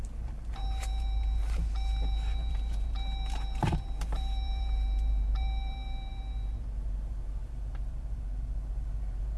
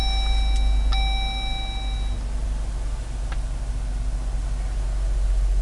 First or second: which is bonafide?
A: second